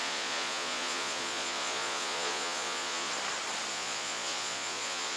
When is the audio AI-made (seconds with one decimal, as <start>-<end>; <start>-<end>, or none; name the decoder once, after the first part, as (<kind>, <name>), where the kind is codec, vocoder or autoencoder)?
0.0-3.1 (vocoder, Vocos); 3.7-5.2

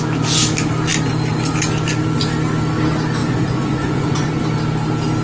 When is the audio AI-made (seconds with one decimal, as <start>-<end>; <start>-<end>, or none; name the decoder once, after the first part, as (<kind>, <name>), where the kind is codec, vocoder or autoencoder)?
3.2-4.4 (vocoder, Vocos)

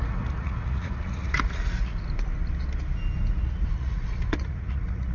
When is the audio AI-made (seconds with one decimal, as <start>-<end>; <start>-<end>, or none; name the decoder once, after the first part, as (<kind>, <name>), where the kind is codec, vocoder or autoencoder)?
0.0-1.9 (vocoder, Vocos); 3.3-5.1

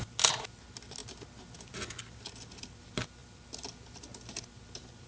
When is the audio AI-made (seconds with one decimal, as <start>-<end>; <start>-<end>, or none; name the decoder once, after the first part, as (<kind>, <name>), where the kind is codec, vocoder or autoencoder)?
none

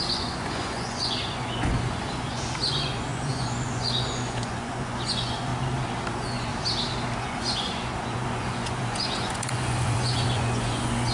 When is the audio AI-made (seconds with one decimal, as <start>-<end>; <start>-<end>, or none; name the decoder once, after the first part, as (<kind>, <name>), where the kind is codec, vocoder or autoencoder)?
0.0-5.5 (vocoder, Vocos); 6.1-6.5; 7.2-11.1